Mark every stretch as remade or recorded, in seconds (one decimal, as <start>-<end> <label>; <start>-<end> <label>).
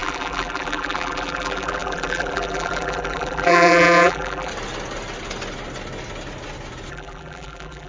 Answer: 0.0-4.5 remade; 4.5-6.9 recorded; 6.9-7.9 remade